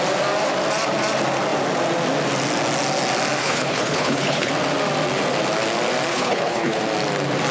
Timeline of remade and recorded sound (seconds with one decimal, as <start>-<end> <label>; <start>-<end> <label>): 0.0-3.4 recorded; 3.4-4.5 remade; 4.5-6.1 recorded; 6.1-6.8 remade; 6.8-7.5 recorded